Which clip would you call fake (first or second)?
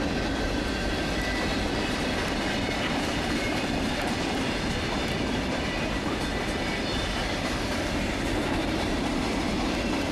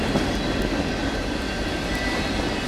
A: first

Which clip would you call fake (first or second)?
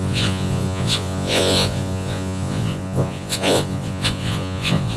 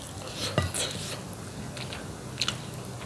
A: first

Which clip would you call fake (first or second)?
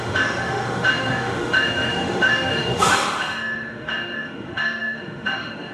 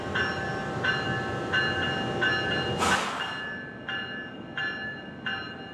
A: first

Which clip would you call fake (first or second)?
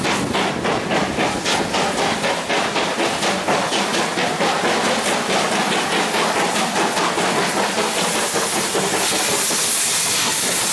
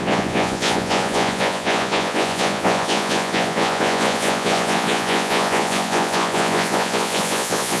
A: second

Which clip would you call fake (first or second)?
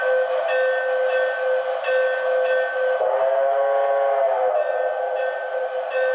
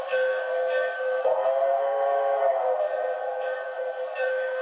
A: second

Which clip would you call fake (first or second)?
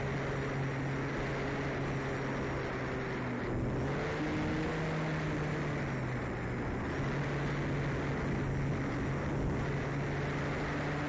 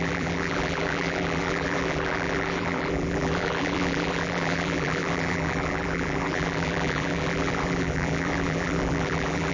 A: second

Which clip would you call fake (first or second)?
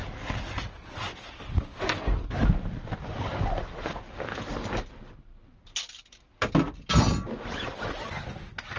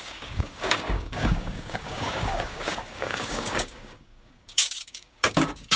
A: second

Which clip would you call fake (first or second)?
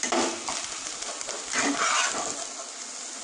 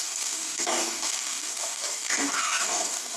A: second